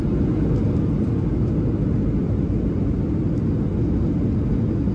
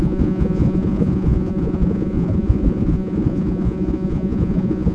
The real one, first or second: first